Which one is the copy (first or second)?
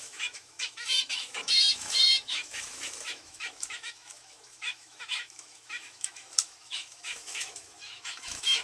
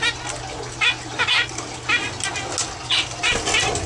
first